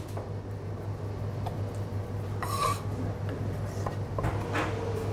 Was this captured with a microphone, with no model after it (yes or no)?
yes